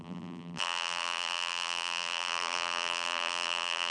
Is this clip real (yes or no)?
no